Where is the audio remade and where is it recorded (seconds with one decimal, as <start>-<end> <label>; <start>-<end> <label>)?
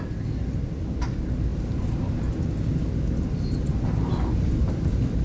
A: 0.0-5.2 recorded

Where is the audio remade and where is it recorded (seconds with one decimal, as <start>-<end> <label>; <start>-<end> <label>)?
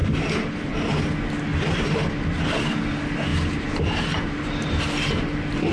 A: 0.0-0.7 remade; 0.7-1.5 recorded; 1.5-2.8 remade; 2.8-3.3 recorded; 3.3-4.8 remade; 4.8-5.7 recorded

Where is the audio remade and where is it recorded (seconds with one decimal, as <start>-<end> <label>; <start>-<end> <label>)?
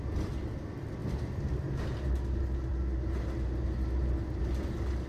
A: 0.0-1.0 recorded; 1.0-1.8 remade; 1.8-5.1 recorded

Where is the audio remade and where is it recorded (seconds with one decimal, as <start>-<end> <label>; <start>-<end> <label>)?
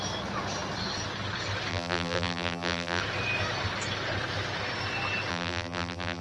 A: 0.0-1.7 recorded; 1.7-3.0 remade; 3.0-5.3 recorded; 5.3-6.2 remade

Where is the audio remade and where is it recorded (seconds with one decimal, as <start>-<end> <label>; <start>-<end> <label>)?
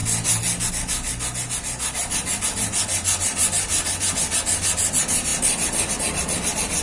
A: 0.0-6.8 recorded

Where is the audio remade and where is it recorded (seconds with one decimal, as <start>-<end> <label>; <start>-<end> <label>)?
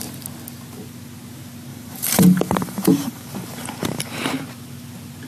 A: 0.0-1.7 recorded; 1.7-4.1 remade; 4.1-5.3 recorded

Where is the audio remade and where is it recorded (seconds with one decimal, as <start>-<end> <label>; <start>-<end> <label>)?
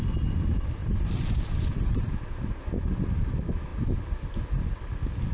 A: 0.0-0.8 recorded; 0.8-2.6 remade; 2.6-5.3 recorded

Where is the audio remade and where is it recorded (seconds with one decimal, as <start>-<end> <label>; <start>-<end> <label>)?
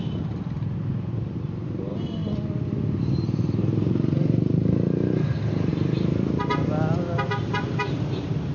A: 0.0-2.2 remade; 2.2-3.0 recorded; 3.0-5.7 remade; 5.7-7.5 recorded; 7.5-8.5 remade